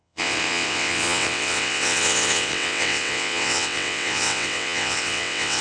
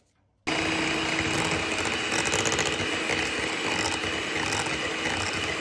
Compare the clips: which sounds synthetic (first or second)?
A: first